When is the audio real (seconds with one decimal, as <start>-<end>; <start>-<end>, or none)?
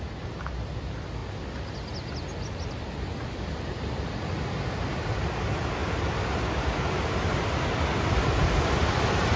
0.0-9.4